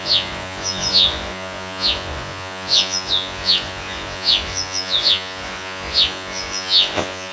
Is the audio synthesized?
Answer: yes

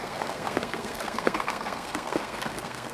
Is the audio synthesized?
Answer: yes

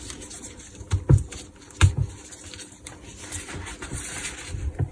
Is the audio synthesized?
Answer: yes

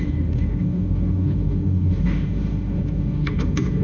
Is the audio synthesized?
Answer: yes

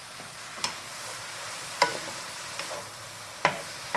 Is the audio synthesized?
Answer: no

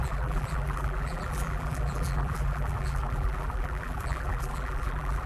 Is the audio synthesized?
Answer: yes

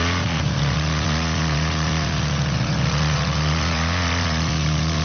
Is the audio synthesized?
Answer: yes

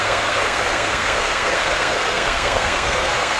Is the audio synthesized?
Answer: yes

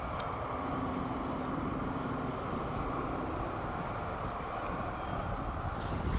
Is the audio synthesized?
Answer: no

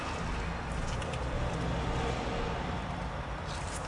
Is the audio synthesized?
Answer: no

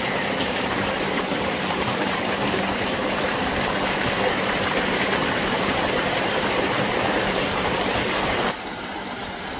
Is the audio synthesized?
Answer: yes